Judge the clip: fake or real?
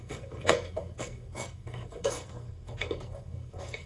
fake